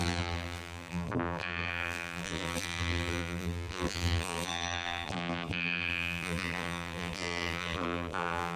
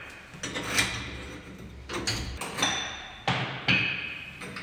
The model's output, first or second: first